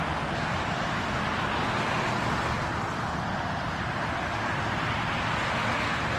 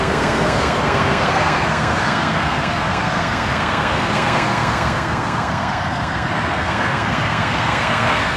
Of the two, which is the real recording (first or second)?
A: first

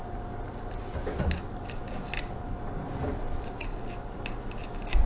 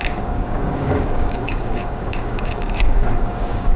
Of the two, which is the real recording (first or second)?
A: first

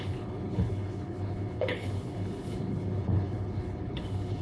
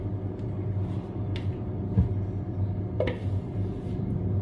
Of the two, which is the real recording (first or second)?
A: second